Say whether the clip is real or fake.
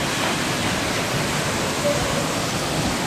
real